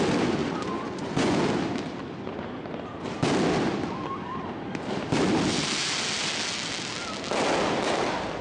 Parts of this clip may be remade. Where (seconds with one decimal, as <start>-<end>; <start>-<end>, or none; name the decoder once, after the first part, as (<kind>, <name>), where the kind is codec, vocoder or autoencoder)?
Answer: 0.4-1.4 (vocoder, Vocos)